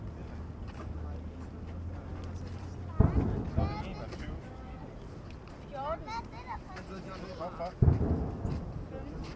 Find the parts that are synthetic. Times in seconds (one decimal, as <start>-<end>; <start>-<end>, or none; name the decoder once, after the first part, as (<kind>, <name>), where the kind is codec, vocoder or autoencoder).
none